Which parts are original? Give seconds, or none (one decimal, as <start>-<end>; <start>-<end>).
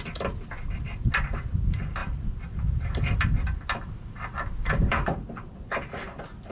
0.0-6.5